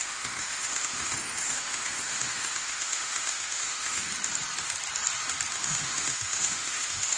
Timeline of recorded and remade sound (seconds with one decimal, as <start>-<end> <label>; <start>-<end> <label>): 0.0-4.1 remade; 4.1-5.5 recorded; 5.5-7.2 remade